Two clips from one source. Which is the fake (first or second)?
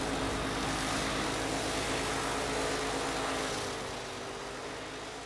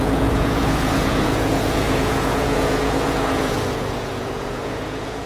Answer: second